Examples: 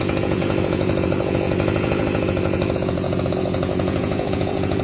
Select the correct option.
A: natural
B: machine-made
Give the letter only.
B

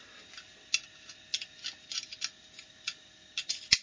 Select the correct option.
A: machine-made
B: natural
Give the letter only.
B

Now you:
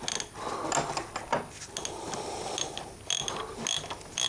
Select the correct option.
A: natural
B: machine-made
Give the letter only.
A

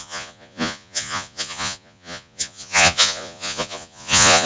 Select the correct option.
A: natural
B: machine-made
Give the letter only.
B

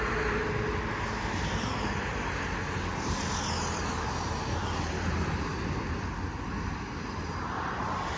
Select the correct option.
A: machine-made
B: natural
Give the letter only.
B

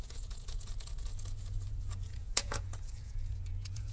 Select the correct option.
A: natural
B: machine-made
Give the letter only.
B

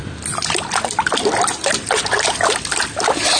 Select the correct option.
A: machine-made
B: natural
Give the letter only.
B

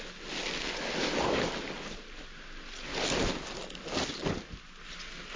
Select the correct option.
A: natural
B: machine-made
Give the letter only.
A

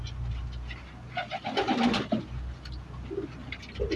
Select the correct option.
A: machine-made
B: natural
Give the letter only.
B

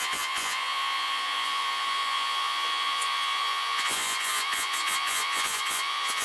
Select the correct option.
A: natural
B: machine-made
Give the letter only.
B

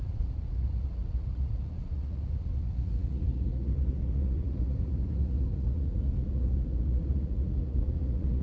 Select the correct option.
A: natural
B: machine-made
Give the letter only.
B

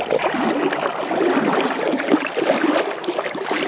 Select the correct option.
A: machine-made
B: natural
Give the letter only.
B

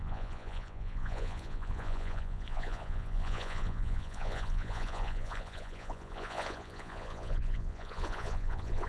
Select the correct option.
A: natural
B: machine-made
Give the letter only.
B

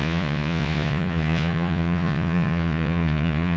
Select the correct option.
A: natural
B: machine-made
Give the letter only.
B